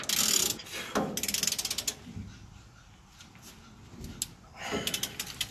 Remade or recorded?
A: recorded